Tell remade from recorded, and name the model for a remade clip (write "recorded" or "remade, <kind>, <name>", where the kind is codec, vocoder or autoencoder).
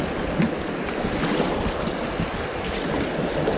recorded